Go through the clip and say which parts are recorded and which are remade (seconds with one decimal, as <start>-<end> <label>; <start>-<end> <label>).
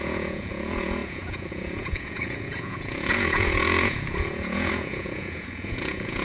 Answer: 0.0-6.2 remade